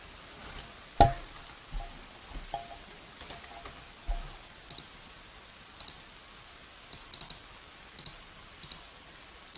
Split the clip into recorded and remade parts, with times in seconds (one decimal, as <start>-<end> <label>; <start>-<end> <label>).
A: 0.0-9.6 recorded